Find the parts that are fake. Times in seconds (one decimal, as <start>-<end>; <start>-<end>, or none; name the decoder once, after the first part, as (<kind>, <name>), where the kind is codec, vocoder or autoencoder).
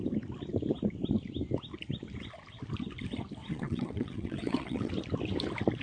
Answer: 3.4-4.9 (vocoder, WaveNeXt)